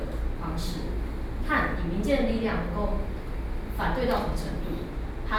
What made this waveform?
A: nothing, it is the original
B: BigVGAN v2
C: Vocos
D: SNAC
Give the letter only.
A